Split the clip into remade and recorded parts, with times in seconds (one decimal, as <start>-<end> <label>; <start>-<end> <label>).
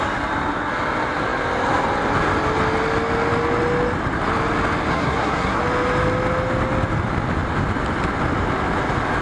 0.0-4.9 recorded; 4.9-5.6 remade; 5.6-9.2 recorded